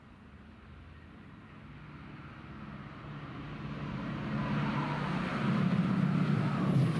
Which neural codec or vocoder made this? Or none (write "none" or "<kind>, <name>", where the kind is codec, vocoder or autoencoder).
none